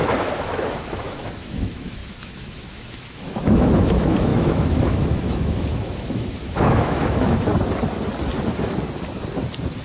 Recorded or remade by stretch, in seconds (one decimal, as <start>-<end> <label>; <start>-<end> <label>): 0.0-7.5 remade; 7.5-9.8 recorded